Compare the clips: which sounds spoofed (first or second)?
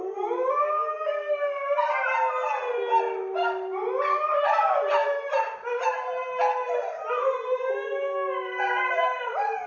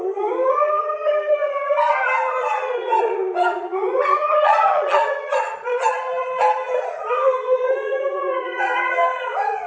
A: second